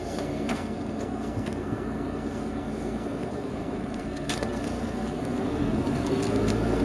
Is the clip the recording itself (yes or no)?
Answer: no